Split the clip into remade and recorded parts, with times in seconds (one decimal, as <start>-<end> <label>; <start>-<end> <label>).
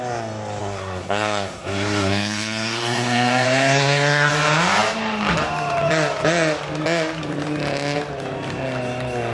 0.0-0.6 recorded; 0.6-4.3 remade; 4.3-9.3 recorded